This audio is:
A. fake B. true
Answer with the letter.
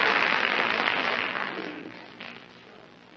A